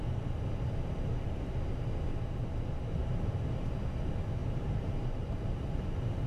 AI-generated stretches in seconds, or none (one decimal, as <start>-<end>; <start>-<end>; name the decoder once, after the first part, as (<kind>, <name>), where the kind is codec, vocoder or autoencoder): 3.0-3.7 (vocoder, BigVGAN v2); 4.4-6.3